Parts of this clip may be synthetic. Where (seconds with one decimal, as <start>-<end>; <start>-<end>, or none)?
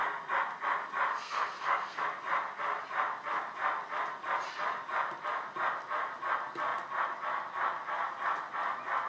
1.1-2.0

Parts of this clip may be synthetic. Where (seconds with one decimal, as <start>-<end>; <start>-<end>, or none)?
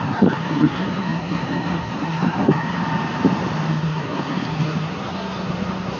0.0-2.8; 3.7-6.0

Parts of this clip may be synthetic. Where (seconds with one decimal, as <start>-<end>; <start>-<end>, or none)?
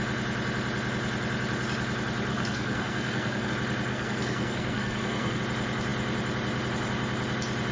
2.3-3.5; 3.9-5.4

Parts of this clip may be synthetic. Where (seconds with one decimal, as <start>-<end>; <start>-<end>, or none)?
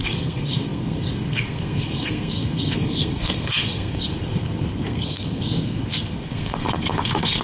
0.0-7.4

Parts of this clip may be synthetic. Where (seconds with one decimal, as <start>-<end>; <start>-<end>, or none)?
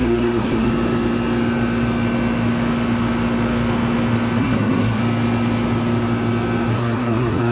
0.0-0.7; 4.4-5.0; 6.7-7.5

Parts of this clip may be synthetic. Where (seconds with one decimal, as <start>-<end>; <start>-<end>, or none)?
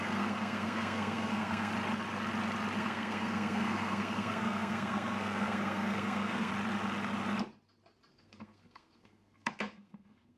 0.0-1.7; 2.8-6.5; 8.1-10.4